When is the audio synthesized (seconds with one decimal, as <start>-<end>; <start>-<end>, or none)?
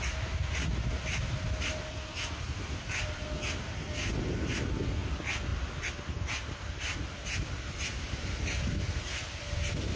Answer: none